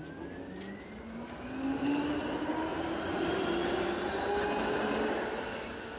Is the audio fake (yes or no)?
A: no